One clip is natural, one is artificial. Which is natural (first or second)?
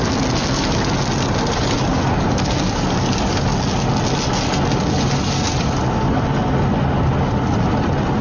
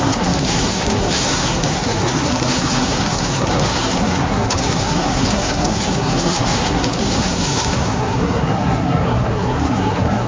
first